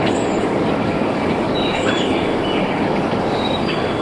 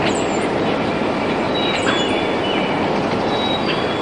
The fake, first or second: first